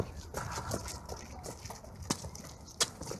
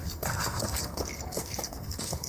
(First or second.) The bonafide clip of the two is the first